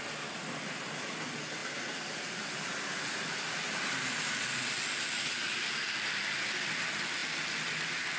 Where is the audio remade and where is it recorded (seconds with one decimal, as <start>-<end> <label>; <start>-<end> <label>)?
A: 0.0-8.2 recorded